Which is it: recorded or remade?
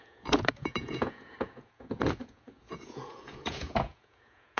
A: remade